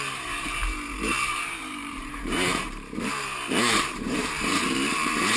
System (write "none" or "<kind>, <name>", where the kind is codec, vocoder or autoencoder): vocoder, BigVGAN v2